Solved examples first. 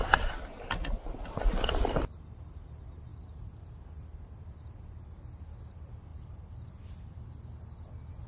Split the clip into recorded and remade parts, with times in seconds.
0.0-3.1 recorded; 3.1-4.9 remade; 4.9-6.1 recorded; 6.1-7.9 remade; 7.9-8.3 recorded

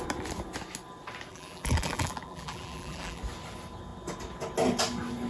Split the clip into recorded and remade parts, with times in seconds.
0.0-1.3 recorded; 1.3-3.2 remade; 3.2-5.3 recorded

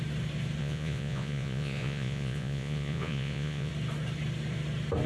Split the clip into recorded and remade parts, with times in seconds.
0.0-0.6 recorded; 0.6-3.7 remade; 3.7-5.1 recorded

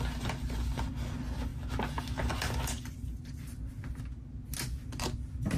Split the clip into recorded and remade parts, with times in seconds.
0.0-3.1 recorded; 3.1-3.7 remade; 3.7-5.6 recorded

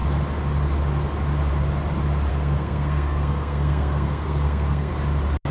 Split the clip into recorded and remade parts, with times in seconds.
0.0-2.3 recorded; 2.3-4.9 remade; 4.9-5.5 recorded